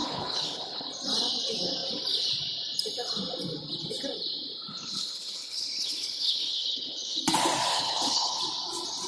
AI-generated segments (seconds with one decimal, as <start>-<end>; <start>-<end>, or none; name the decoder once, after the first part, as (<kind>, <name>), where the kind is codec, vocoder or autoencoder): 0.0-0.9 (codec, HILCodec); 4.7-7.2; 7.7-8.4